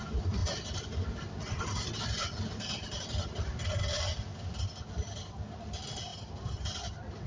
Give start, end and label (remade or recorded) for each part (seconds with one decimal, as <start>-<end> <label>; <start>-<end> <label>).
0.0-7.3 remade